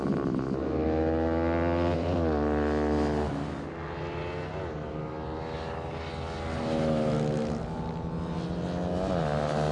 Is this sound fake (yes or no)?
no